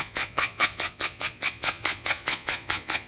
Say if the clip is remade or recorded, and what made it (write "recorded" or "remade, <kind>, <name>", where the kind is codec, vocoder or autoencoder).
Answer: remade, vocoder, Vocos